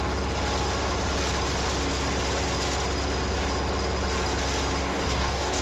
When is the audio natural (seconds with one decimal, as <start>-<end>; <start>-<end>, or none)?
0.0-4.8